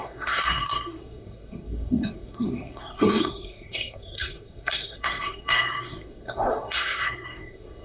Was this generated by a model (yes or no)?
yes